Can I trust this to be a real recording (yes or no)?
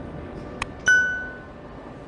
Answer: yes